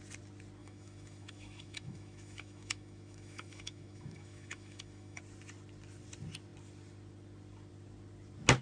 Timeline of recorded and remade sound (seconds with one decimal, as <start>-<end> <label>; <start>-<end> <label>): 0.0-0.6 recorded; 0.6-5.2 remade; 5.2-8.6 recorded

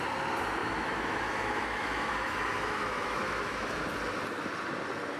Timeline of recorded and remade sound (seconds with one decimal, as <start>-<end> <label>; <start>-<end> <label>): 0.0-0.6 recorded; 0.6-3.7 remade; 3.7-5.2 recorded

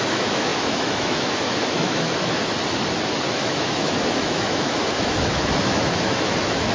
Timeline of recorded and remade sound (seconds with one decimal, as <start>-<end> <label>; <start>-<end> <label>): 0.0-2.4 remade; 2.4-3.3 recorded; 3.3-6.7 remade

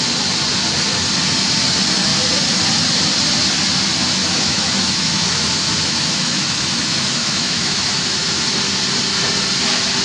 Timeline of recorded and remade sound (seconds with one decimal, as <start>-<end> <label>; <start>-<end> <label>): 0.0-4.2 recorded; 4.2-8.5 remade; 8.5-10.0 recorded

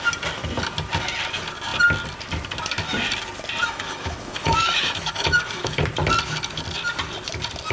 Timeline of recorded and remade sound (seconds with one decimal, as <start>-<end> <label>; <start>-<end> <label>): 0.0-3.6 recorded; 3.6-5.8 remade; 5.8-7.7 recorded

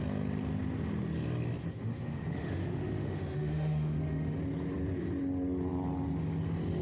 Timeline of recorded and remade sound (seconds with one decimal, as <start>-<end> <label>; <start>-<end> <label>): 0.0-1.6 recorded; 1.6-4.4 remade; 4.4-6.8 recorded